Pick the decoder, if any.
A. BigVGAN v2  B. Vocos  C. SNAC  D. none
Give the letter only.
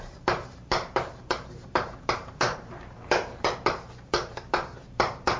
A